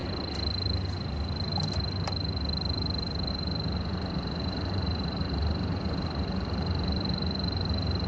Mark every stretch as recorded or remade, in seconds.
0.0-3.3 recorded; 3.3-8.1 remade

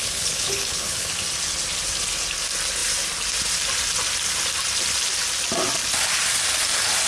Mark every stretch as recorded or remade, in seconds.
0.0-1.1 remade; 1.1-7.1 recorded